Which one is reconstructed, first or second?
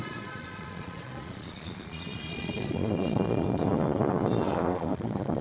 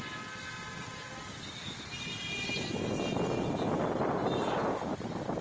first